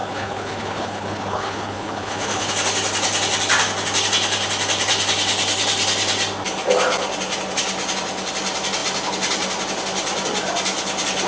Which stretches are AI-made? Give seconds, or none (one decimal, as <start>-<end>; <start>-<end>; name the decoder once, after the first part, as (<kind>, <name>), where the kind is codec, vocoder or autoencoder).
0.0-2.5 (codec, HILCodec)